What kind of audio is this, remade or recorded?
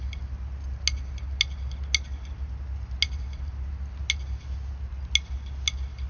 recorded